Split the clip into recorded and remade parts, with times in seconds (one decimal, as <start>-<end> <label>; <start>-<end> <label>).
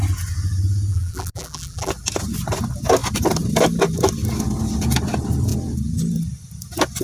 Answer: 0.0-0.9 recorded; 0.9-1.9 remade; 1.9-7.0 recorded